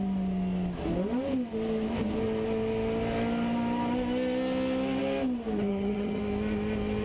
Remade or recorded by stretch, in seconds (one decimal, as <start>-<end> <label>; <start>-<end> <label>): 0.0-5.7 recorded; 5.7-6.2 remade; 6.2-7.0 recorded